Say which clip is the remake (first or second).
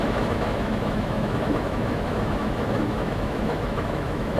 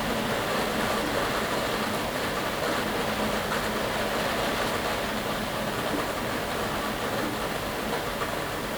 first